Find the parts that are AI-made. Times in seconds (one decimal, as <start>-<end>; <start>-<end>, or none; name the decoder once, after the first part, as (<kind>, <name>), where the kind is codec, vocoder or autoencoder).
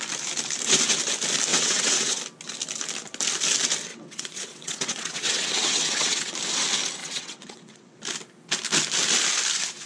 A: 1.5-2.2 (vocoder, WaveNeXt); 3.9-6.3; 7.0-8.0